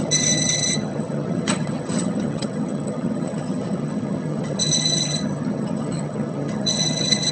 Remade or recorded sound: remade